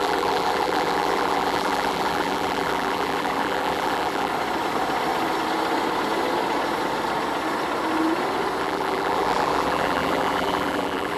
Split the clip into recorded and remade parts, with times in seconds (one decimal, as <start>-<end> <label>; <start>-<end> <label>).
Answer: 0.0-4.3 remade; 4.3-8.6 recorded; 8.6-11.2 remade